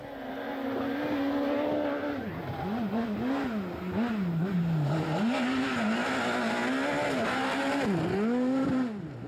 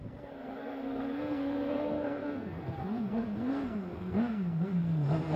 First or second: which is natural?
first